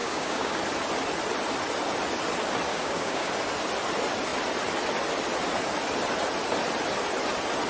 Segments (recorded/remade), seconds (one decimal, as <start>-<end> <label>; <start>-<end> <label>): 0.0-0.6 remade; 0.6-2.7 recorded; 2.7-3.3 remade; 3.3-7.7 recorded